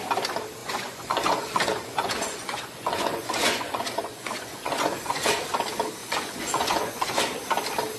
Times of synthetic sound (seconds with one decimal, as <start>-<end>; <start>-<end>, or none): 0.6-5.4; 6.0-7.2